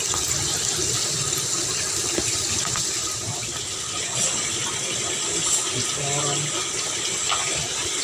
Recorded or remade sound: recorded